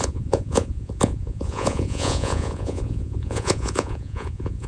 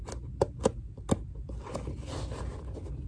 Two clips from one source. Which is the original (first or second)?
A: second